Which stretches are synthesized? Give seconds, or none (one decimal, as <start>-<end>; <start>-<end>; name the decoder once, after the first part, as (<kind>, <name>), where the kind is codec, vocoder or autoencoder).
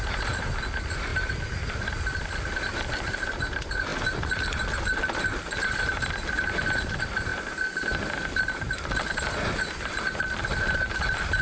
none